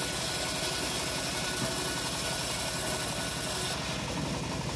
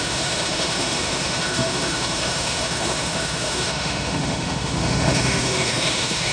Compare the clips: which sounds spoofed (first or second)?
second